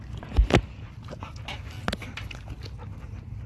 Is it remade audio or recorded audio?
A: recorded